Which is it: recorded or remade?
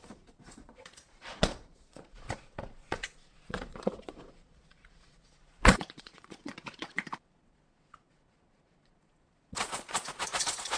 remade